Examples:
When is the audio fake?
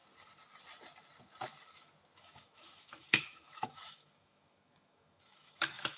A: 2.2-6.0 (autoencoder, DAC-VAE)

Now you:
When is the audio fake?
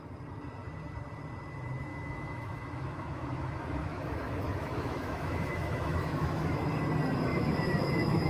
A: 1.9-6.7 (autoencoder, DAC-VAE); 7.3-8.3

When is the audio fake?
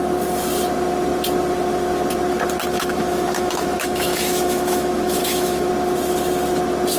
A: 2.6-5.7 (autoencoder, DAC-VAE)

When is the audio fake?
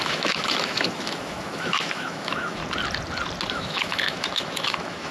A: 0.0-2.6 (autoencoder, DAC-VAE); 3.5-5.1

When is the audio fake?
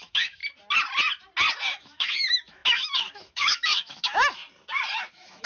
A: 0.0-0.4 (autoencoder, DAC-VAE); 1.7-4.4; 5.1-5.5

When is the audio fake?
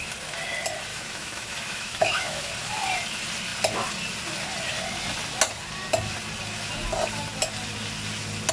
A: 0.9-2.5 (autoencoder, DAC-VAE)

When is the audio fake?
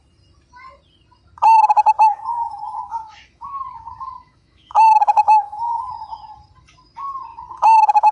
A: 2.1-5.9 (autoencoder, DAC-VAE); 7.3-8.1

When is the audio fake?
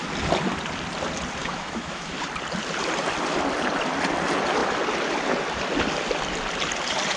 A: 1.4-2.1 (autoencoder, DAC-VAE)